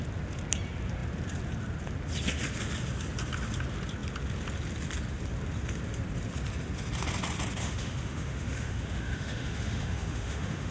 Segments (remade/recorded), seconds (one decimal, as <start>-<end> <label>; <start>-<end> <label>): 0.0-7.6 recorded; 7.6-10.7 remade